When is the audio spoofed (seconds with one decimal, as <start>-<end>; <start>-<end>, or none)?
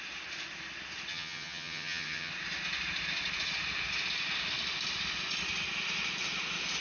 1.1-2.3